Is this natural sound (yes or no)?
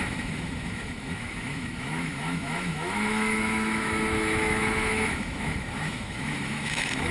no